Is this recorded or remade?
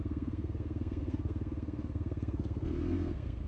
remade